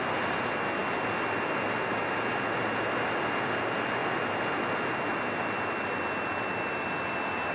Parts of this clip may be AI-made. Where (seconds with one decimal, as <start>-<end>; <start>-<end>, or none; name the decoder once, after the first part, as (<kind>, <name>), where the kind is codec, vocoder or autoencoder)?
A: none